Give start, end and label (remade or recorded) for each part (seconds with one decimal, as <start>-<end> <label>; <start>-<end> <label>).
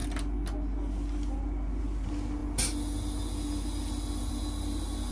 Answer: 0.0-5.1 recorded